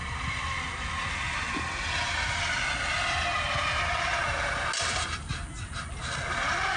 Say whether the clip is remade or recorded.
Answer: recorded